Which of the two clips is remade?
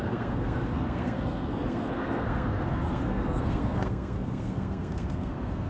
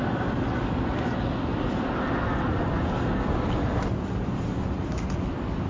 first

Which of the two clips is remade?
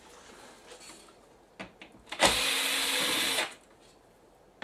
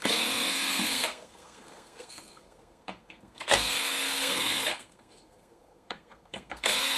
second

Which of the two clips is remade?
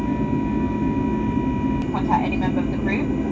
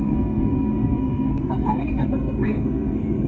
second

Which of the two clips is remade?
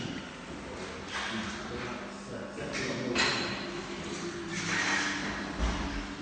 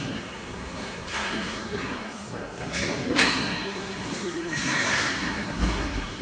second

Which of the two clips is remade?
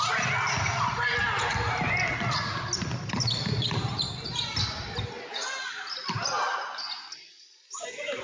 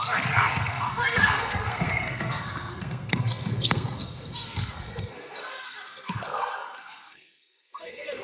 second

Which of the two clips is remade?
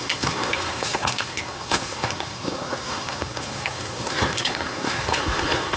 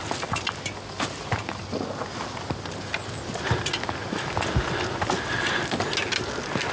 first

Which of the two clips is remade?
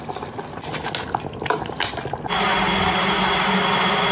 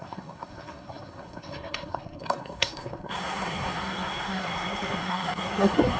second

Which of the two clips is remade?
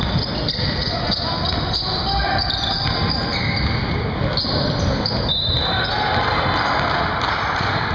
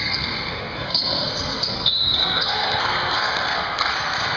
second